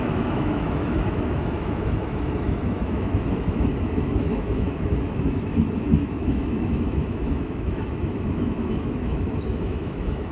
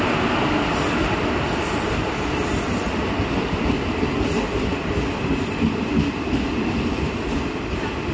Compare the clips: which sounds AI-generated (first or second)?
first